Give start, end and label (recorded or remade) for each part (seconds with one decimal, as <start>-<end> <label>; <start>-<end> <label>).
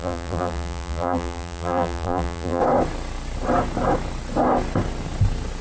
0.0-2.6 remade; 2.6-5.6 recorded